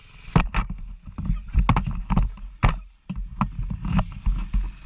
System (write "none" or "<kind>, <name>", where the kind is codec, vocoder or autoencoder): none